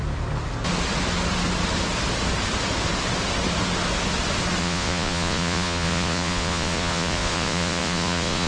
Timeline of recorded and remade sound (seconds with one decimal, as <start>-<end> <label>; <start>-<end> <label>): 0.0-4.6 recorded; 4.6-8.5 remade